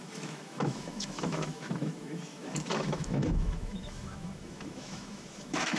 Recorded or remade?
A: remade